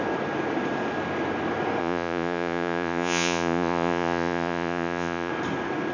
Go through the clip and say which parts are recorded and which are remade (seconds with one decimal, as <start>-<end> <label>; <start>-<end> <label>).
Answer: 0.0-1.8 recorded; 1.8-5.3 remade; 5.3-5.9 recorded